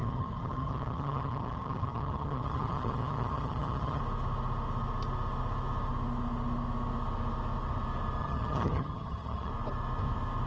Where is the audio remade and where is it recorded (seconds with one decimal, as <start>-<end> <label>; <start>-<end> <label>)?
0.0-4.0 remade; 4.0-8.2 recorded; 8.2-9.5 remade; 9.5-10.5 recorded